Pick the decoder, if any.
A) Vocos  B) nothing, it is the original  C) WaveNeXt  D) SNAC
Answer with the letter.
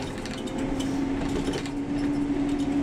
B